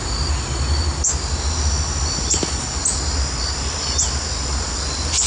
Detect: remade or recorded recorded